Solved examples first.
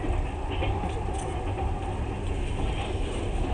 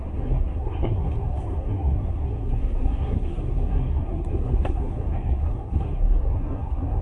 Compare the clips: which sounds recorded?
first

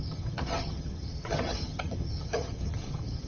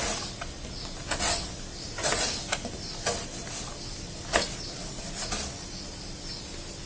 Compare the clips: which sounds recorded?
second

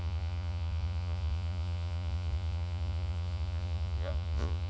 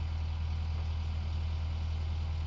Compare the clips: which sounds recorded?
second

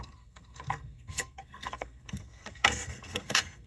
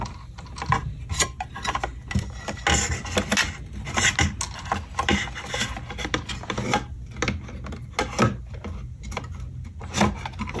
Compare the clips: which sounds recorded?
second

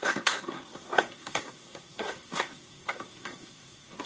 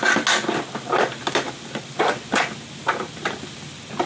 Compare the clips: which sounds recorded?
second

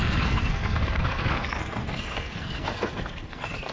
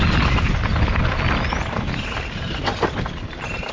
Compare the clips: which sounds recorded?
second